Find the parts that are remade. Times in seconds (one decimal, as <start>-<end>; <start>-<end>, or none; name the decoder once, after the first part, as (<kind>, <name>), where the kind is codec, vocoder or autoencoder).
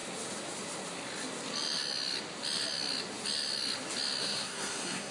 4.2-5.1 (codec, SNAC)